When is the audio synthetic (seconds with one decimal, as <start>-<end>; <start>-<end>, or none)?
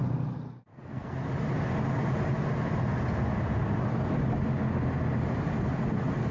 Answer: 0.7-1.2